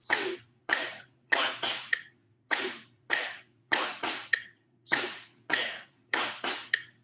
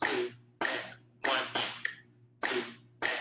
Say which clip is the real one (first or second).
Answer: second